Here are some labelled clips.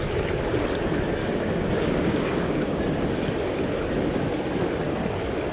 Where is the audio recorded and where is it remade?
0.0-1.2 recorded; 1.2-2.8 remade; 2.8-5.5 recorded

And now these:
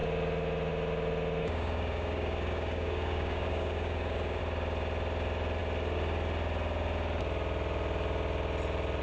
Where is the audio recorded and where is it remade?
0.0-1.4 recorded; 1.4-4.4 remade; 4.4-9.0 recorded

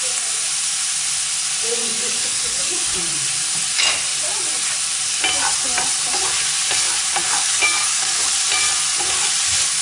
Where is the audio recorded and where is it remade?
0.0-1.8 recorded; 1.8-3.0 remade; 3.0-7.2 recorded; 7.2-8.3 remade; 8.3-9.8 recorded